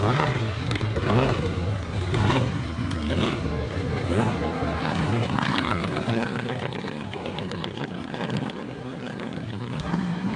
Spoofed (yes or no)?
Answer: yes